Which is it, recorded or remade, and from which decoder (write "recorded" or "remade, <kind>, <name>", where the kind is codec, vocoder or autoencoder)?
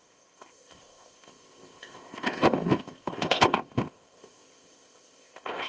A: remade, codec, ZipCodec